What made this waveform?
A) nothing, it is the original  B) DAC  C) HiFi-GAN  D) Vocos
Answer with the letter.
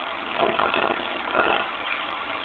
C